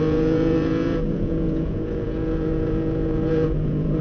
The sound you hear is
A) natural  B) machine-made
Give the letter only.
B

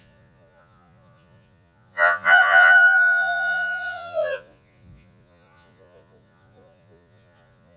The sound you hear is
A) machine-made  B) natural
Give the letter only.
A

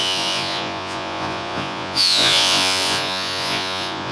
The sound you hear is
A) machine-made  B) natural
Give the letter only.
A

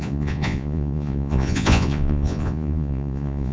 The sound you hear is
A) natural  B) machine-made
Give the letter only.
B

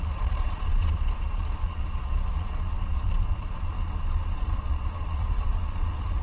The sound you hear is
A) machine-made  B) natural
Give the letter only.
A